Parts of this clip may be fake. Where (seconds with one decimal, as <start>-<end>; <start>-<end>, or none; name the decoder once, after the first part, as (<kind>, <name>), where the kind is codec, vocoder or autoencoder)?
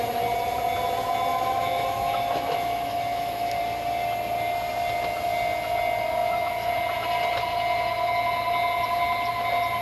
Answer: 1.3-3.6 (autoencoder, DAC-VAE); 6.2-6.7